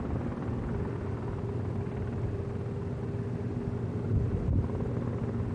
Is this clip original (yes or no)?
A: yes